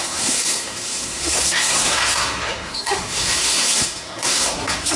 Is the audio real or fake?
fake